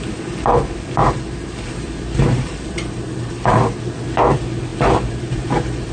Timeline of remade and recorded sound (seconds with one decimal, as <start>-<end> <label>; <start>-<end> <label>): 0.0-1.0 recorded; 1.0-3.8 remade; 3.8-4.7 recorded; 4.7-5.9 remade